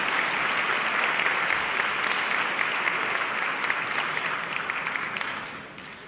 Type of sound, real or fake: real